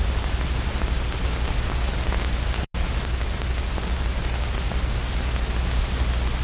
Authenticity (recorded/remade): recorded